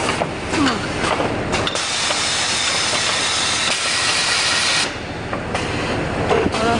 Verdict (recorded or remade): recorded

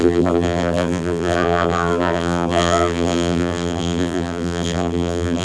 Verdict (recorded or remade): remade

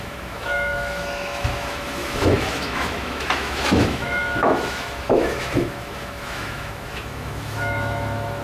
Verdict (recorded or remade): remade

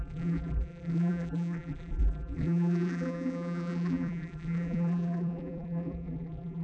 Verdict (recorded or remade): remade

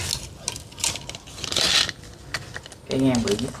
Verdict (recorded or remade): recorded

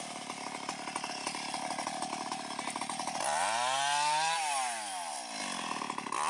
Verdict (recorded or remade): recorded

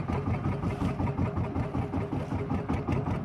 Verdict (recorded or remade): recorded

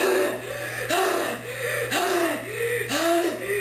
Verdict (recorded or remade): recorded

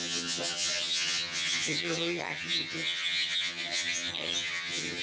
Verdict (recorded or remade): remade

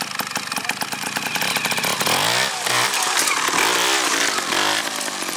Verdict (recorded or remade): recorded